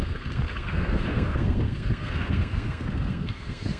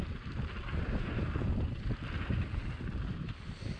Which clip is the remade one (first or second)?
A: first